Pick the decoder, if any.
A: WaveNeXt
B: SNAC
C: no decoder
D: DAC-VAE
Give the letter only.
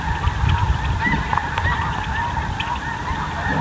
C